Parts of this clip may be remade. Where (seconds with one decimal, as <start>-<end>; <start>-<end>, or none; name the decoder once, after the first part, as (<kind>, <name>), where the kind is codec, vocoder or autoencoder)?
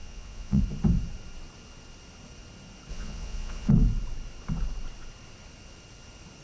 0.0-0.6 (vocoder, Vocos); 2.9-3.7